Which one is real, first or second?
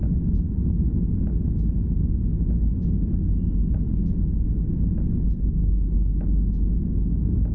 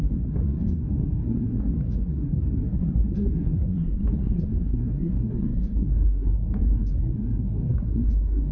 first